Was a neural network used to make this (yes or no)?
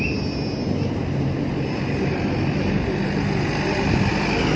no